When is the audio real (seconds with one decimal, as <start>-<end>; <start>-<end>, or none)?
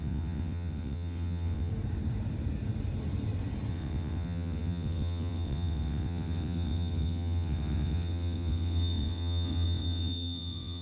1.7-3.7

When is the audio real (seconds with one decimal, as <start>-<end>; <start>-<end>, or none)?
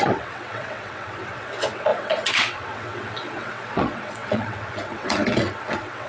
none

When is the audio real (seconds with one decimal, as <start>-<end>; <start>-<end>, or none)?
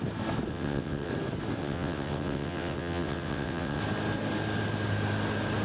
0.0-0.5; 1.1-1.6; 3.8-5.6